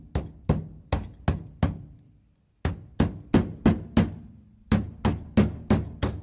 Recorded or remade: recorded